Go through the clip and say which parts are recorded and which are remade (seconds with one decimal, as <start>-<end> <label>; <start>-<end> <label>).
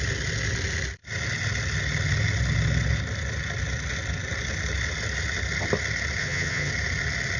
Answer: 0.0-6.2 recorded; 6.2-6.7 remade; 6.7-7.4 recorded